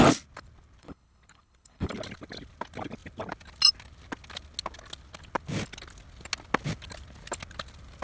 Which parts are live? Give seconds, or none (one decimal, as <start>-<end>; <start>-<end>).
0.0-0.8; 1.9-8.0